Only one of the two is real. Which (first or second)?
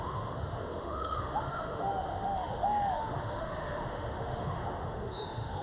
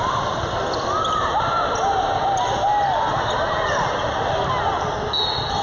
second